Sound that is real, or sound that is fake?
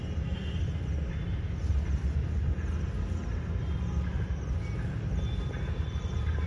real